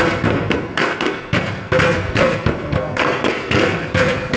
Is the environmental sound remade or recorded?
remade